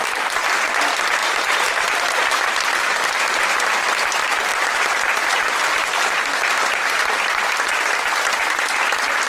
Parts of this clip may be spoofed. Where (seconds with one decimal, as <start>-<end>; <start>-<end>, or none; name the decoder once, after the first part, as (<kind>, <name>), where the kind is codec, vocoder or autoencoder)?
1.2-3.3 (vocoder, BigVGAN v2); 4.5-7.1